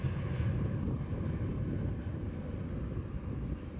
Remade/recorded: recorded